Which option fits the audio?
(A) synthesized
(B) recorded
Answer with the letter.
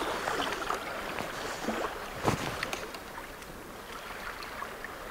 B